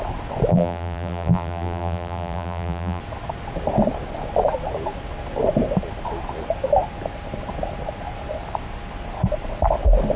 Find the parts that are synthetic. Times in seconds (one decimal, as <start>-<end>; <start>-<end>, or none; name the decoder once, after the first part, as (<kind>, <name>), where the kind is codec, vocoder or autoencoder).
0.5-3.0 (vocoder, BigVGAN v2)